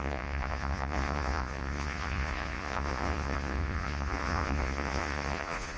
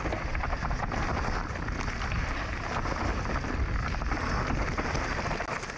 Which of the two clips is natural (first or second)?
second